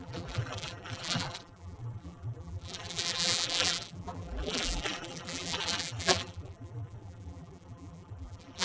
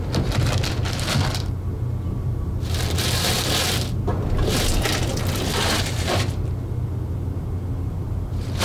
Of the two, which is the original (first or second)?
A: second